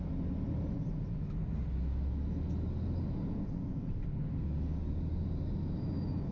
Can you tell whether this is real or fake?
real